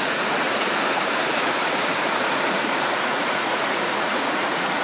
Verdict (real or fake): fake